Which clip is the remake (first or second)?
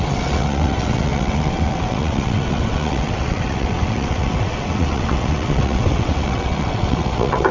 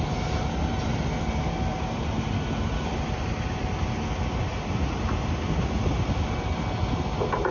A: first